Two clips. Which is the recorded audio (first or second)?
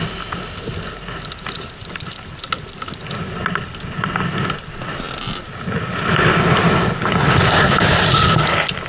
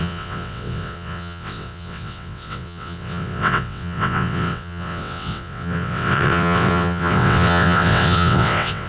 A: first